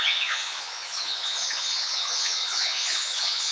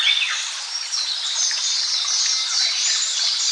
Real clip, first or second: second